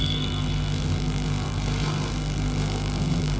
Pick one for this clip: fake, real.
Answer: fake